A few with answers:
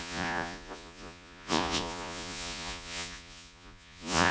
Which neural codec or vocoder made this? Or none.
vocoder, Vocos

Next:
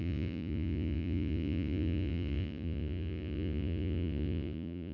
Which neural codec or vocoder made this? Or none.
vocoder, Vocos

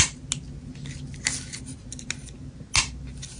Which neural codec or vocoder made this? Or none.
none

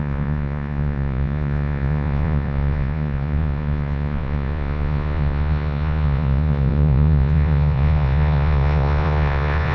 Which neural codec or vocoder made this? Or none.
vocoder, Vocos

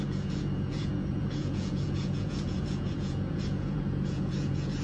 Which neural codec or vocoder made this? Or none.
vocoder, Vocos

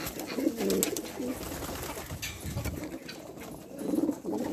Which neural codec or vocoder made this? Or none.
none